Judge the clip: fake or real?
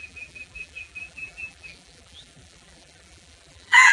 fake